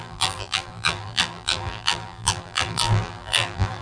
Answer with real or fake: fake